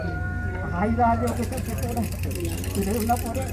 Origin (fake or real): real